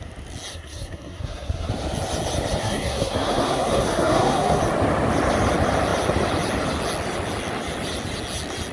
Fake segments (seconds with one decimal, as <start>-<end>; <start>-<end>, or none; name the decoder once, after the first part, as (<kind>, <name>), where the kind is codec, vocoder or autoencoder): 0.5-1.7 (codec, SNAC); 2.6-4.6